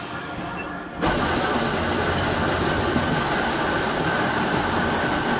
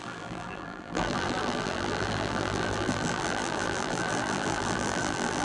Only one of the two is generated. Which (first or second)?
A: second